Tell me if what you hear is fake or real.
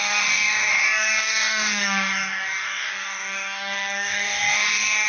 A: fake